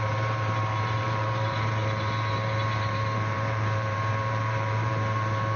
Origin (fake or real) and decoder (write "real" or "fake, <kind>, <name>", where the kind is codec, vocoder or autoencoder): fake, vocoder, BigVGAN v2